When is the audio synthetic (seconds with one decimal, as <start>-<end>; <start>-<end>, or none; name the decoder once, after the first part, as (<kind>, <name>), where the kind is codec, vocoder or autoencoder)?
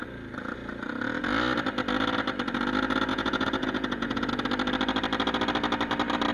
3.1-4.3 (vocoder, Vocos)